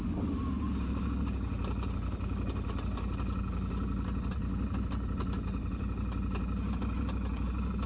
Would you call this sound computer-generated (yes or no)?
no